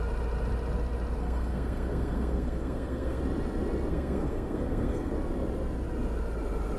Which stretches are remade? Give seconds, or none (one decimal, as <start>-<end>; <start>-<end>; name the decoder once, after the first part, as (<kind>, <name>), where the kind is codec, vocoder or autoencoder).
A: 1.2-3.2 (codec, SNAC); 3.9-5.1